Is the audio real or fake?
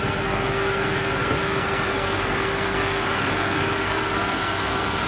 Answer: fake